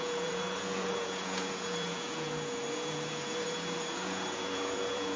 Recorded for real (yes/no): no